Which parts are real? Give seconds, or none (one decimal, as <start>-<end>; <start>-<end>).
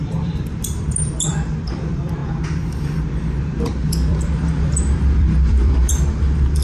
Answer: 2.2-3.4